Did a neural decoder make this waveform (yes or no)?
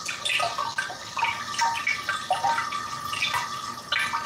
no